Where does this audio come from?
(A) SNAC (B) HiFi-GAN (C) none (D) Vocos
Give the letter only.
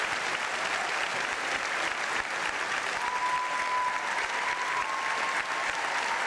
C